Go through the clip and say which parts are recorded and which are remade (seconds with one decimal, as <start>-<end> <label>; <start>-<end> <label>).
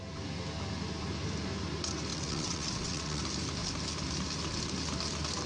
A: 0.0-2.1 recorded; 2.1-3.2 remade; 3.2-5.5 recorded